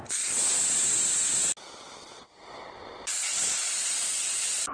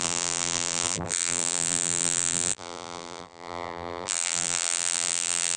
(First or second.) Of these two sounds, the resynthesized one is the second